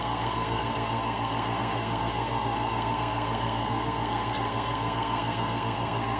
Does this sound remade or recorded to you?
remade